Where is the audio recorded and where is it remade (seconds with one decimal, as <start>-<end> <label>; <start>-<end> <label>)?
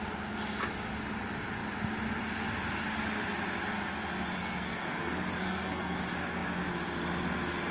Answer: 0.0-4.4 recorded; 4.4-6.0 remade; 6.0-7.7 recorded